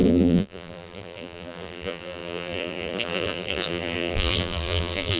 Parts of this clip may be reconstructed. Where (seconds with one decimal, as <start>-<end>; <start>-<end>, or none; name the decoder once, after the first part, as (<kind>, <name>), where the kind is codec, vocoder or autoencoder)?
0.0-5.2 (vocoder, BigVGAN v2)